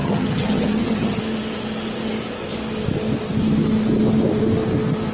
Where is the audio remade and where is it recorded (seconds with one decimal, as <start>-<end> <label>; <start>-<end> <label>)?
0.0-1.2 remade; 1.2-5.1 recorded